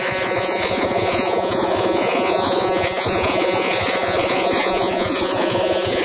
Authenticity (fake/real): fake